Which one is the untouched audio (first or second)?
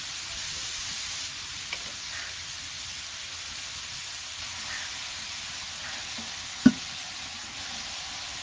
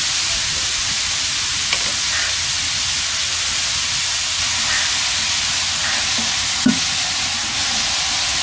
second